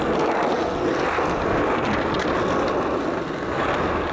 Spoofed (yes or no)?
no